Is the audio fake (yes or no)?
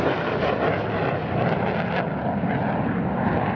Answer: no